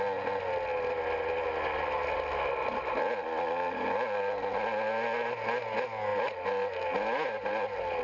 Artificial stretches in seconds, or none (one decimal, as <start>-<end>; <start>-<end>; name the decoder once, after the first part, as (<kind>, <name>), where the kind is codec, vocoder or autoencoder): none